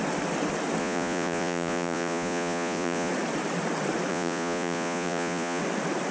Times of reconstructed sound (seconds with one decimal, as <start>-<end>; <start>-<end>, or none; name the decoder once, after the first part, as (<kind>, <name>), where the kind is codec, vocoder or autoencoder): 0.8-3.1 (vocoder, Vocos); 4.1-5.6